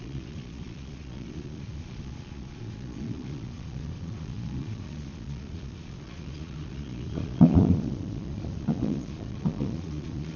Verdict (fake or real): fake